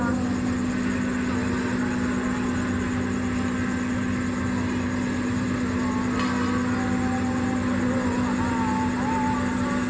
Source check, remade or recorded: recorded